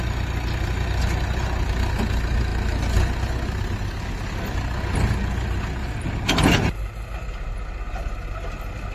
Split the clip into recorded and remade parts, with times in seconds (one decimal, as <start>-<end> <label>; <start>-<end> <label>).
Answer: 0.0-8.9 recorded